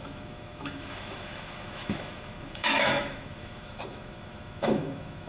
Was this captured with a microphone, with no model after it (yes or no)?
no